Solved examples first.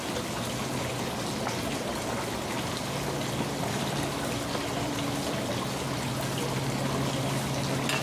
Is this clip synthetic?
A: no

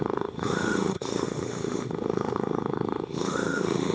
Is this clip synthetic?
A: yes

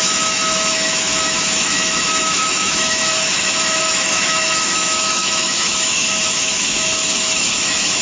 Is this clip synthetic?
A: yes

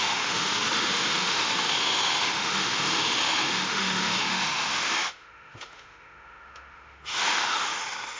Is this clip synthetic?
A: yes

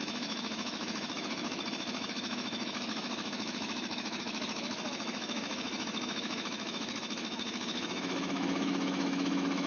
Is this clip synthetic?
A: yes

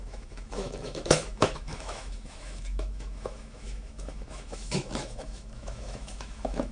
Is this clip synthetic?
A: yes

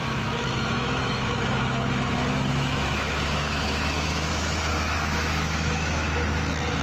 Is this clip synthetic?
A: yes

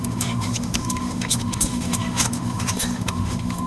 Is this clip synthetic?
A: yes